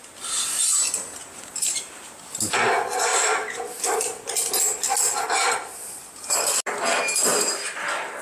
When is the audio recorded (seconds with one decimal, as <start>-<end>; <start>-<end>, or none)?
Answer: 0.0-1.2; 2.5-3.1; 4.5-7.3